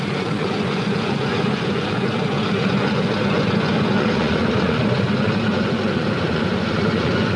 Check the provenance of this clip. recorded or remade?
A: remade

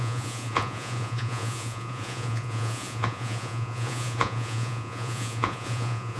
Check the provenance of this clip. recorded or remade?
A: remade